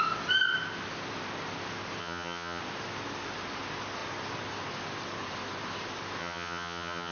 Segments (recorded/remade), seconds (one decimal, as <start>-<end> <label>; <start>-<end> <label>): 0.0-2.0 recorded; 2.0-2.6 remade; 2.6-6.2 recorded; 6.2-7.1 remade